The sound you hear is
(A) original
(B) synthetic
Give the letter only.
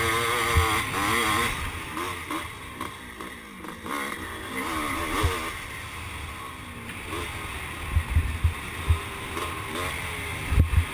A